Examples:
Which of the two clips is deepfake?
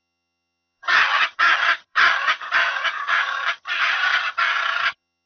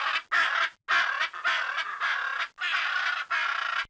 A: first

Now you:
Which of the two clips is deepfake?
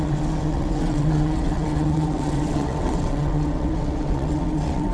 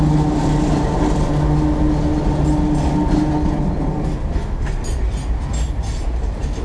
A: first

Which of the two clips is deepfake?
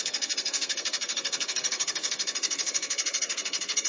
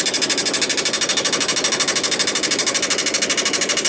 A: first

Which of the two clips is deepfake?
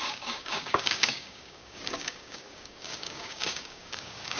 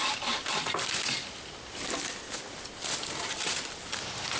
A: first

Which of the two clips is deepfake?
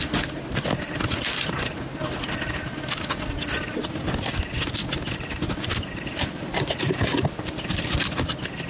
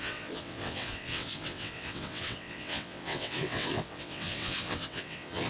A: second